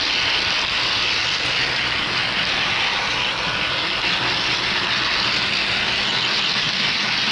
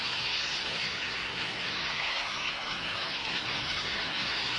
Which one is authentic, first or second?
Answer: first